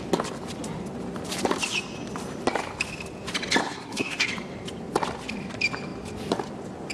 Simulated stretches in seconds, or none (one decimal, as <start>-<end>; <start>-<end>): 3.6-4.3